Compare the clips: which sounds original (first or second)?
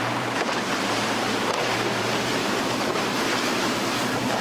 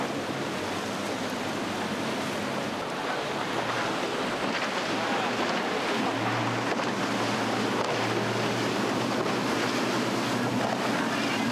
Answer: second